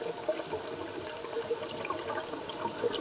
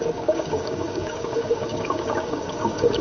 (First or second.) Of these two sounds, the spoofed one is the second